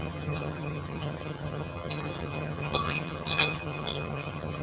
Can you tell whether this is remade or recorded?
remade